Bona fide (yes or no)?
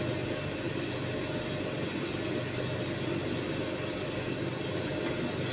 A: yes